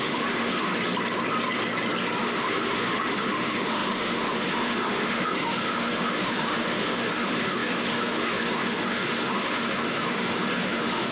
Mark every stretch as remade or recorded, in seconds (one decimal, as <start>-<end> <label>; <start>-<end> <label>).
0.0-0.7 remade; 0.7-2.2 recorded; 2.2-11.1 remade

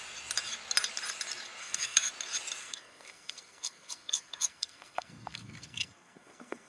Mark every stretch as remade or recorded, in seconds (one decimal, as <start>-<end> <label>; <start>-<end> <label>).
0.0-1.6 recorded; 1.6-2.1 remade; 2.1-2.6 recorded; 2.6-6.7 remade